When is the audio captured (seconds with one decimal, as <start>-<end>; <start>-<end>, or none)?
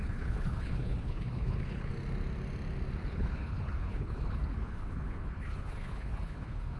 1.9-3.1